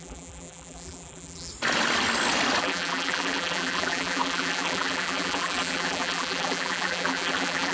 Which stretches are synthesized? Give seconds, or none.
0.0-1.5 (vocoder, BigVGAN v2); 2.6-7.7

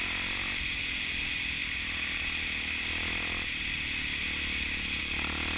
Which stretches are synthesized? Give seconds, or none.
none

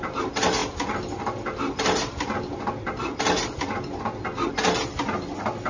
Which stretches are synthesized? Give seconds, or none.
none

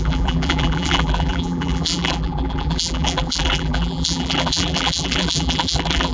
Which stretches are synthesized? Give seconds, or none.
0.0-6.1 (vocoder, BigVGAN v2)

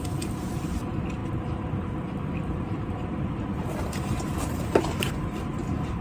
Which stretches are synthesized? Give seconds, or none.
0.0-6.0 (vocoder, BigVGAN v2)

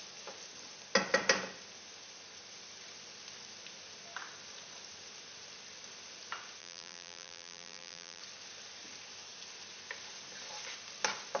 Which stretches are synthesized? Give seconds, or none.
6.6-8.2 (vocoder, BigVGAN v2)

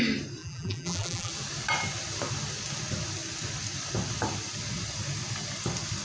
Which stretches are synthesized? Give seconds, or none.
0.4-1.3 (vocoder, BigVGAN v2)

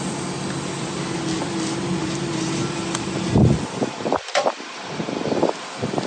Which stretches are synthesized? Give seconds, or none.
2.0-5.5 (vocoder, BigVGAN v2)